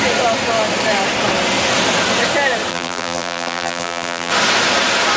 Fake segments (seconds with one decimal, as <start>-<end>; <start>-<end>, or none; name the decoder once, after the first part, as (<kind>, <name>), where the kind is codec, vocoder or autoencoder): 2.7-4.3 (vocoder, BigVGAN v2)